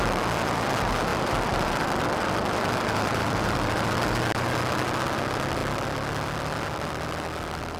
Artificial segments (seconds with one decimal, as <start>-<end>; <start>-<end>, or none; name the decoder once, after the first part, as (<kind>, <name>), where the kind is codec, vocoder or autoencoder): 1.1-4.6 (vocoder, BigVGAN v2)